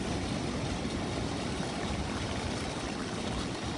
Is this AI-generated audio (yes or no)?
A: no